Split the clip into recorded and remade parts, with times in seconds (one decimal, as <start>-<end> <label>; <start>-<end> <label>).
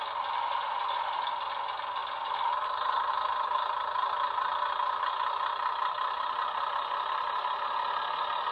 0.0-2.0 recorded; 2.0-3.1 remade; 3.1-8.5 recorded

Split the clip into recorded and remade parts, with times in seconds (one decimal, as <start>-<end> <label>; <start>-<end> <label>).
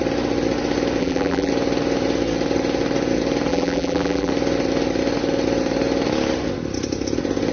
0.0-1.0 recorded; 1.0-1.5 remade; 1.5-3.5 recorded; 3.5-4.3 remade; 4.3-7.5 recorded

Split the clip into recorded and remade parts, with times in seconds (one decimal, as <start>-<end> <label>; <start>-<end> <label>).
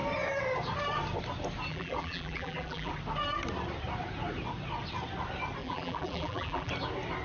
0.0-1.7 recorded; 1.7-2.9 remade; 2.9-5.6 recorded; 5.6-6.7 remade; 6.7-7.2 recorded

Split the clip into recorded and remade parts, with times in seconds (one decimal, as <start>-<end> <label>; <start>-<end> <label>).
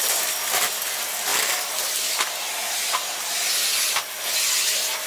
0.0-5.1 recorded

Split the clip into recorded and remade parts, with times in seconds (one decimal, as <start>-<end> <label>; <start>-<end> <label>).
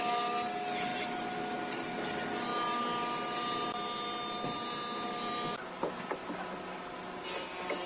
0.0-0.9 recorded; 0.9-2.0 remade; 2.0-7.9 recorded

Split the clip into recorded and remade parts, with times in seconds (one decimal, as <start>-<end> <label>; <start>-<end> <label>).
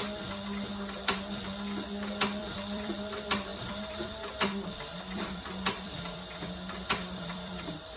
0.0-2.4 recorded; 2.4-2.9 remade; 2.9-3.5 recorded; 3.5-8.0 remade